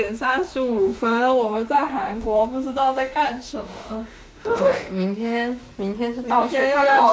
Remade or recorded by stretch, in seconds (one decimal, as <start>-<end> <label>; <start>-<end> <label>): 0.0-5.6 remade; 5.6-6.3 recorded; 6.3-7.1 remade